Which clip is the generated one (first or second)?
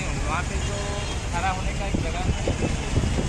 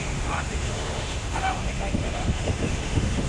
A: second